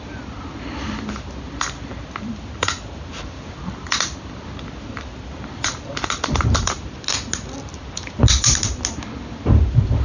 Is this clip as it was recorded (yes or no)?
yes